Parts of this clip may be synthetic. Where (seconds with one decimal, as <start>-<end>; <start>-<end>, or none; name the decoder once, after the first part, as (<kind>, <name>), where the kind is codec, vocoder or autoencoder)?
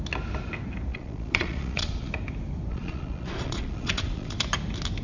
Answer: 0.9-2.1 (vocoder, Vocos); 2.7-4.4